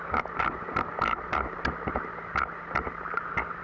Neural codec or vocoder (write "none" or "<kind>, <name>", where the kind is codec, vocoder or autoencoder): none